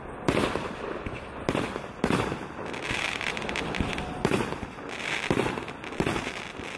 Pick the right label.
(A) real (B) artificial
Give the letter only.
A